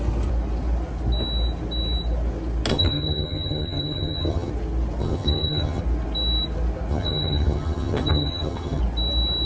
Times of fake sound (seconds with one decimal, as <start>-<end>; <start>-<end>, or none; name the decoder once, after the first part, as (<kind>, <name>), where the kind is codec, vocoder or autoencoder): 2.7-4.5 (vocoder, HiFi-GAN); 5.0-5.8; 6.9-8.8